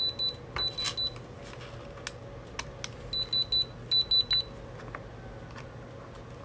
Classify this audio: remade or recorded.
recorded